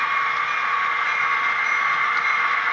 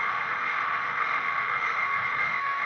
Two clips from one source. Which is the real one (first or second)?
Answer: first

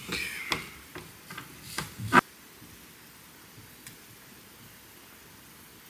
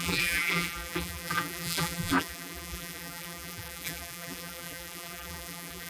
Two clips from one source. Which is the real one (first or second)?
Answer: first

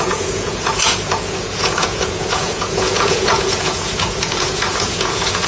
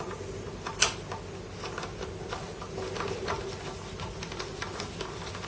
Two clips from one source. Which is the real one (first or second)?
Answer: second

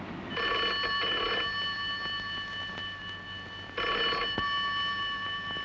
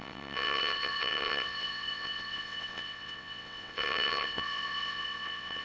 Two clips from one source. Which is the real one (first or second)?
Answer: first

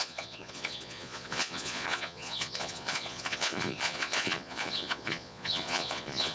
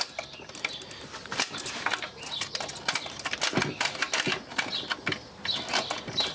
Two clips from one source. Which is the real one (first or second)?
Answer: second